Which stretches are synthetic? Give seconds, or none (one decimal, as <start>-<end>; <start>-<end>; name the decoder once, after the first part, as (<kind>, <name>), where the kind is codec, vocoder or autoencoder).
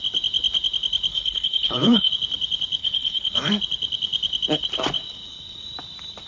1.1-2.1 (codec, HILCodec); 2.8-3.5